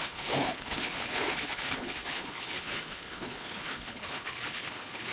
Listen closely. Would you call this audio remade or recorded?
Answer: remade